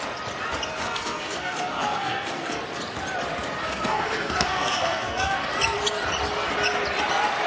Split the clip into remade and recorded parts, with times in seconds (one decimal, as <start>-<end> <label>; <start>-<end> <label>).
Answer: 0.0-0.8 recorded; 0.8-2.6 remade; 2.6-3.6 recorded; 3.6-5.5 remade; 5.5-7.5 recorded